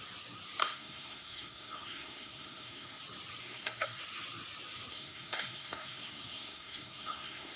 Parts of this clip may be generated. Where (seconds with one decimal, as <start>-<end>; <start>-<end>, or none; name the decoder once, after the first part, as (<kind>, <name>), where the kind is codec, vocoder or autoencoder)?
0.6-3.0 (codec, SNAC); 3.4-4.0; 4.9-7.6